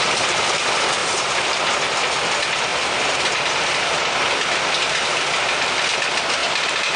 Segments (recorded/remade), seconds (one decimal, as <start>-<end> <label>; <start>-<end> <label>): 0.0-1.0 recorded; 1.0-1.6 remade; 1.6-2.7 recorded; 2.7-3.6 remade; 3.6-6.4 recorded; 6.4-7.0 remade